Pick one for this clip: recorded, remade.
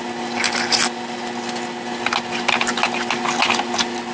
recorded